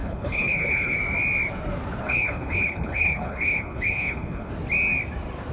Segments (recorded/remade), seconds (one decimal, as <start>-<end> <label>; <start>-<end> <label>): 0.0-1.0 remade; 1.0-2.0 recorded; 2.0-4.5 remade; 4.5-5.5 recorded